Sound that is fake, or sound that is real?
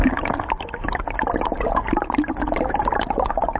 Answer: real